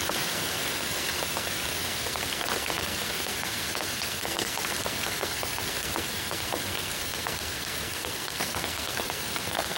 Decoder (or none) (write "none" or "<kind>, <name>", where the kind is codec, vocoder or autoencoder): codec, SNAC